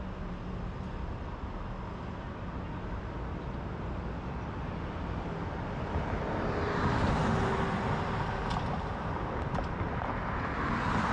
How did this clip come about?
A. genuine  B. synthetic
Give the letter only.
A